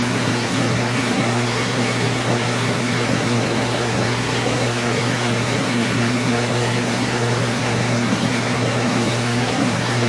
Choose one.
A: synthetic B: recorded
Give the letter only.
A